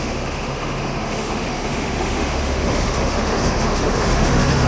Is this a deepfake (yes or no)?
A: yes